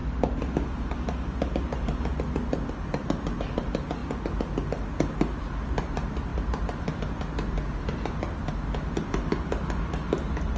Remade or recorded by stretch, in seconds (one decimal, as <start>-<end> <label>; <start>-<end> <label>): 0.0-10.6 recorded